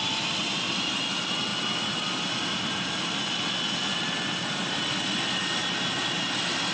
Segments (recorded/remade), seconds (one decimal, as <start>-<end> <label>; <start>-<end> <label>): 0.0-6.7 recorded